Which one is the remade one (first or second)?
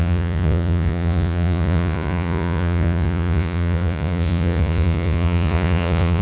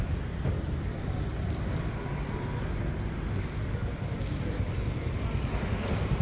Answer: first